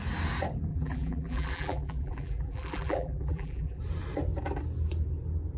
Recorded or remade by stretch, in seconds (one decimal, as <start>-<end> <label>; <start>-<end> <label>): 0.0-0.7 recorded; 0.7-3.8 remade; 3.8-5.6 recorded